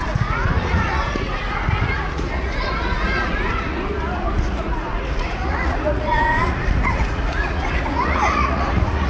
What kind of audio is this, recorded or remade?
remade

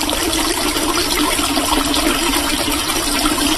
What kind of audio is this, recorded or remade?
remade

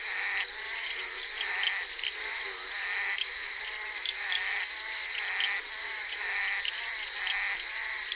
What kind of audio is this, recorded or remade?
recorded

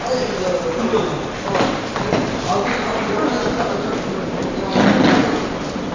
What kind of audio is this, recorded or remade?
recorded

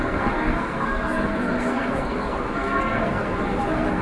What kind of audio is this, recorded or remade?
remade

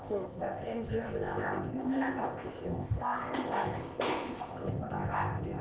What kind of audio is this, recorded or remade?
remade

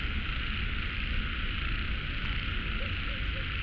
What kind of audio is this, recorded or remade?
recorded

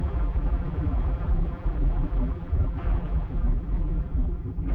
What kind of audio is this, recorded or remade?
remade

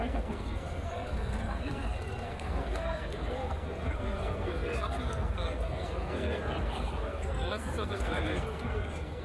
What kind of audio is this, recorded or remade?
remade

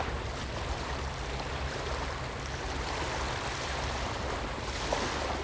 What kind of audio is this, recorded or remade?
recorded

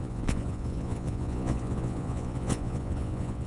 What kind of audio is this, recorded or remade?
remade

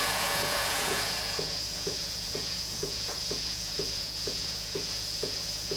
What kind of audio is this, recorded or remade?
remade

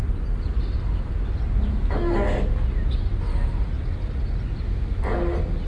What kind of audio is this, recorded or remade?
recorded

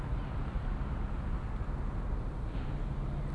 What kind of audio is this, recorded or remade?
recorded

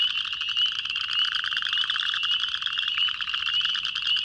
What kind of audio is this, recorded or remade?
recorded